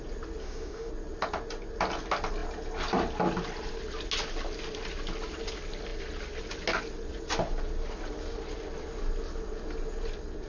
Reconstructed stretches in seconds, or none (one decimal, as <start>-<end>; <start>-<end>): 0.4-0.9